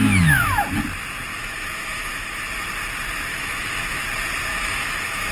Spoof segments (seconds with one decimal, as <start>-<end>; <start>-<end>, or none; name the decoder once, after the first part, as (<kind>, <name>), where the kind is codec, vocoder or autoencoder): 1.3-2.4 (autoencoder, DAC-VAE); 3.3-4.0; 4.5-5.3